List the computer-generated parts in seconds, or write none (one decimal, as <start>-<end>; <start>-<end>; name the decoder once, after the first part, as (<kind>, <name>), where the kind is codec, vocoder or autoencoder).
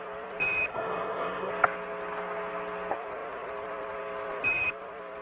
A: 0.7-1.5 (codec, SNAC)